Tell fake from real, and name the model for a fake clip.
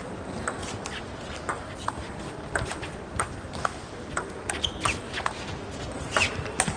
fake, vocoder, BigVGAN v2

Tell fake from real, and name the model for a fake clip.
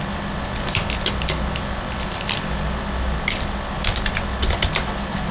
real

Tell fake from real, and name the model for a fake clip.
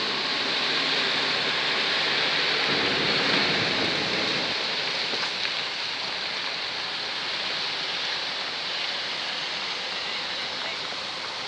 real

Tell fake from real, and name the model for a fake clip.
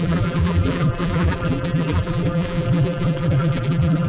fake, vocoder, BigVGAN v2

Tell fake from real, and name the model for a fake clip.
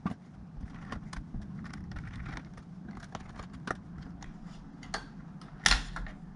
real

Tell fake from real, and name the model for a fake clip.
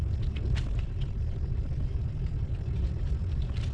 real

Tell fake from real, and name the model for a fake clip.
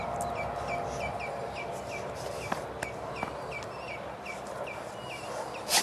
real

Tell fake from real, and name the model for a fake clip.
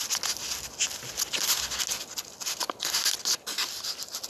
real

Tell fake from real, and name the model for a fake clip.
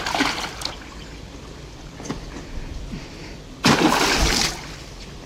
real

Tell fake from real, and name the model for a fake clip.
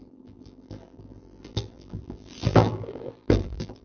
fake, vocoder, BigVGAN v2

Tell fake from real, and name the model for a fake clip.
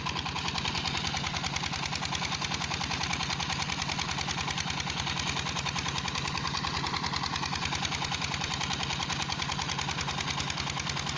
real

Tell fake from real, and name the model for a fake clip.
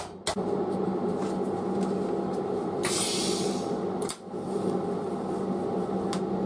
real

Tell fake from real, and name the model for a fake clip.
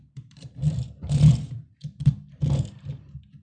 fake, vocoder, BigVGAN v2